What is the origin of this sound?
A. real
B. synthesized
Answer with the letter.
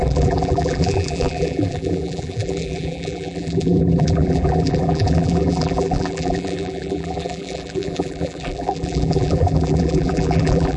B